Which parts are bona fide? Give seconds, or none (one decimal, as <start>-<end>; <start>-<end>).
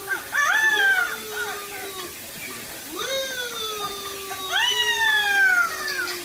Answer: 1.0-2.4; 3.0-6.2